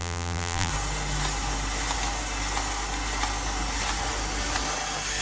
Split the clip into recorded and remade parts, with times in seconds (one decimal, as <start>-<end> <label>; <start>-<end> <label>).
0.0-0.7 remade; 0.7-5.2 recorded